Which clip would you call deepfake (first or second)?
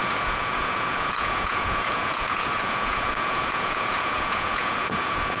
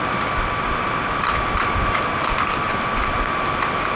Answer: first